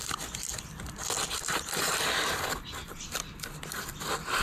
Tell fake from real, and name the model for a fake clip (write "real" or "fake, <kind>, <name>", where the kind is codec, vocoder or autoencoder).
real